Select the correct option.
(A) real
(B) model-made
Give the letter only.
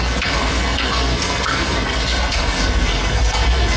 B